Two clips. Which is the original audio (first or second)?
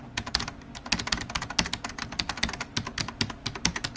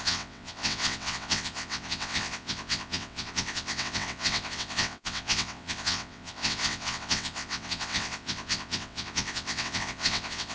first